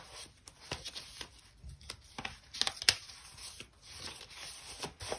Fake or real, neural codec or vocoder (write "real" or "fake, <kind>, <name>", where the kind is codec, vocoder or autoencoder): real